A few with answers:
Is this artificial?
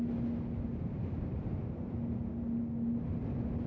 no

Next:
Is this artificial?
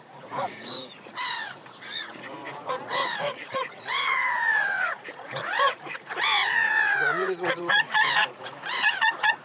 yes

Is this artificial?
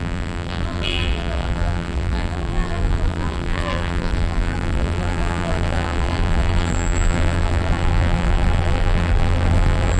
yes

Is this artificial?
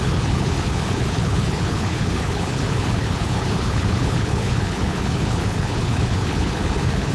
yes